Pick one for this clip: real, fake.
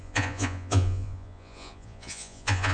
fake